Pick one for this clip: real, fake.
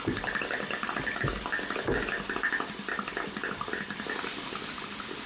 real